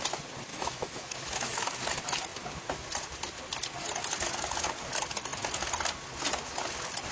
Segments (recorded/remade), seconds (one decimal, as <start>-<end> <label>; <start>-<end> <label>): 0.0-0.5 recorded; 0.5-1.7 remade; 1.7-7.1 recorded